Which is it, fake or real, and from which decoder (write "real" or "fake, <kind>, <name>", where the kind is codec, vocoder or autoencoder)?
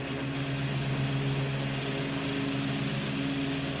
real